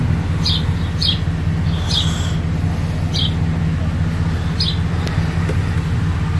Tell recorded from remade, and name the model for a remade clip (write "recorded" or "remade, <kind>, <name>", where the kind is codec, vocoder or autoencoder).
recorded